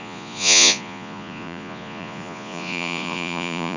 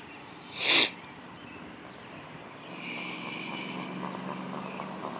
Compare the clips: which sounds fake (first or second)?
first